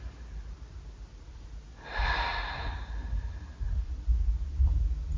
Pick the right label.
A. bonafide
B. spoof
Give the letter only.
A